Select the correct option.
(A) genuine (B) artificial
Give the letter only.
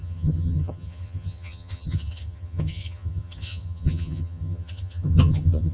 B